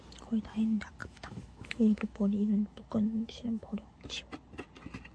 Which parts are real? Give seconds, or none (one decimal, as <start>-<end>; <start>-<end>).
0.0-1.0; 4.1-5.1